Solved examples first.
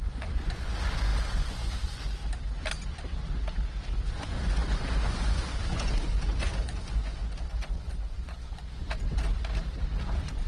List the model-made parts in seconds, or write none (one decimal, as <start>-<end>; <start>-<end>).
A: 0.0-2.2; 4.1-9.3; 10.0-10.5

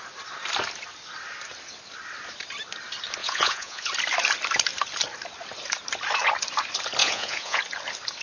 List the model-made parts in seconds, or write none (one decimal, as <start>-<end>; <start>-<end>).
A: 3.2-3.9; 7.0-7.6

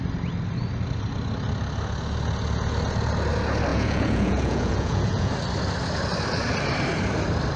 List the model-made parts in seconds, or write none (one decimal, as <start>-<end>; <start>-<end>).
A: 3.7-5.3

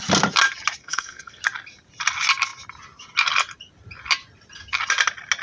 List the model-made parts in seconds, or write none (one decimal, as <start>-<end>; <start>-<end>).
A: 0.8-1.4

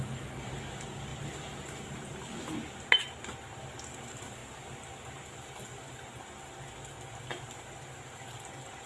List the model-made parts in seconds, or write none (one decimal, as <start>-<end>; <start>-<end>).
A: none

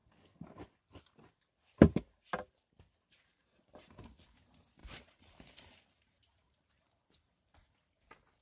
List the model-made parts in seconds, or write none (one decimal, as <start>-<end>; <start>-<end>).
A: 3.2-8.4

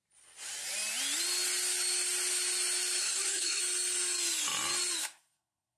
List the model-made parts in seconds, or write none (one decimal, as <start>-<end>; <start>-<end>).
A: 3.0-3.6; 5.0-5.8